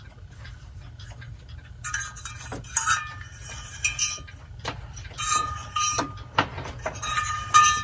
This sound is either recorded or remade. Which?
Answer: recorded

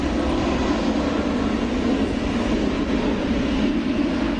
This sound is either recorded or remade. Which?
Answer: recorded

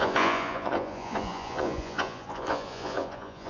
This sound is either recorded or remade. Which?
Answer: remade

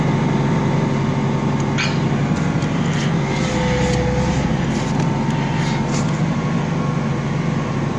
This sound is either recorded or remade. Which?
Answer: recorded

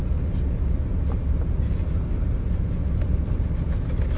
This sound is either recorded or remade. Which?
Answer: recorded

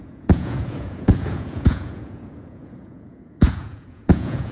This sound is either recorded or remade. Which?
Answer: remade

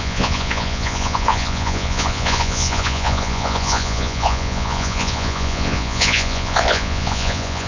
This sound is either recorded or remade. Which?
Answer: remade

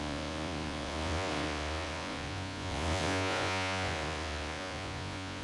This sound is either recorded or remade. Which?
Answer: remade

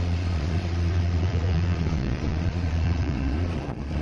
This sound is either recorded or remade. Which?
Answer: remade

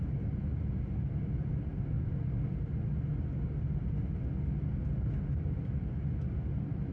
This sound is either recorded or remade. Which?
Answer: recorded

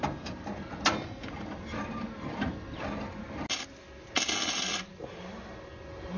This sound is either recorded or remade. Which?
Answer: recorded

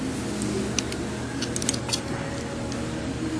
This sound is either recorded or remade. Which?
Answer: recorded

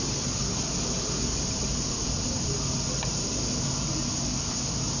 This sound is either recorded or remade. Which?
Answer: recorded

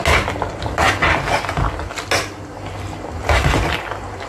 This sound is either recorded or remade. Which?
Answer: recorded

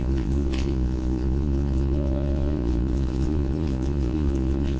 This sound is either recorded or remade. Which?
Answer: remade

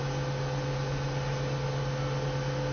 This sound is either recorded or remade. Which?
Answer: recorded